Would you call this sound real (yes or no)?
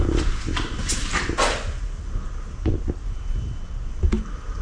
yes